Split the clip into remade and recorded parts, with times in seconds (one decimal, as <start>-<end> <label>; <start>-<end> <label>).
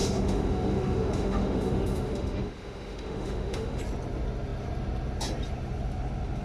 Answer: 0.0-3.8 remade; 3.8-6.4 recorded